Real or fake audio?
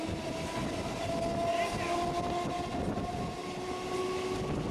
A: real